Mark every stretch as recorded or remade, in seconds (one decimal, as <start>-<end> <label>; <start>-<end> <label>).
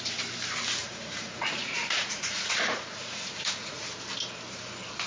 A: 0.0-0.8 recorded; 0.8-3.9 remade; 3.9-5.1 recorded